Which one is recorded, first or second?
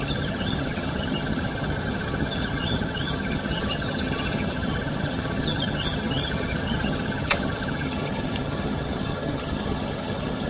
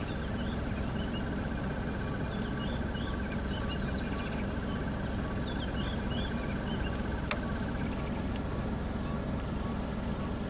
second